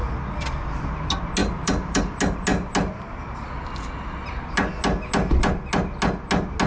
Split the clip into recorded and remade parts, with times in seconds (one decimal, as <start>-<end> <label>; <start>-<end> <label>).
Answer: 0.0-1.4 recorded; 1.4-2.0 remade; 2.0-6.7 recorded